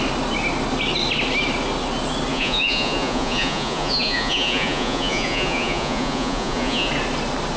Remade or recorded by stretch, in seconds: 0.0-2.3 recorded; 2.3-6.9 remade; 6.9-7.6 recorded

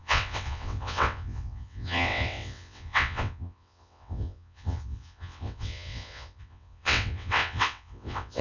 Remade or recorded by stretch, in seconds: 0.0-8.4 remade

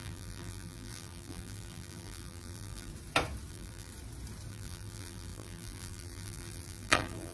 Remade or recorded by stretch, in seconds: 0.0-2.9 remade; 2.9-3.5 recorded; 3.5-3.9 remade; 3.9-4.5 recorded; 4.5-7.3 remade

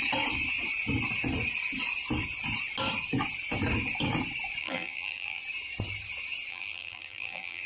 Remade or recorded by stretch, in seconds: 0.0-4.6 recorded; 4.6-5.4 remade; 5.4-6.5 recorded; 6.5-7.7 remade

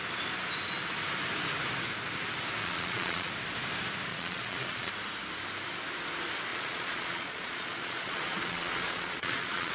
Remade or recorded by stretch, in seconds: 0.0-2.6 recorded; 2.6-3.3 remade; 3.3-4.1 recorded; 4.1-4.9 remade; 4.9-6.5 recorded; 6.5-9.7 remade

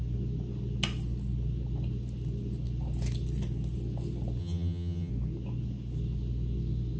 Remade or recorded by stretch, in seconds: 0.0-4.4 recorded; 4.4-5.1 remade; 5.1-7.0 recorded

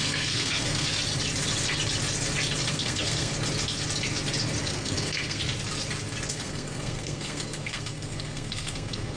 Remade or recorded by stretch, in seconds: 0.0-0.9 remade; 0.9-2.7 recorded; 2.7-3.3 remade; 3.3-4.6 recorded; 4.6-5.4 remade; 5.4-6.3 recorded; 6.3-9.2 remade